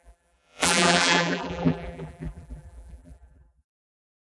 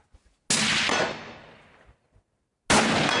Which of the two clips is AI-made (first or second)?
first